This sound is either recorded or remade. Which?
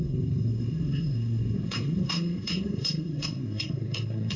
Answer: remade